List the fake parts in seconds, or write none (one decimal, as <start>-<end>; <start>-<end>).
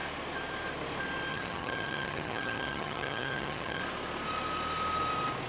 1.3-3.8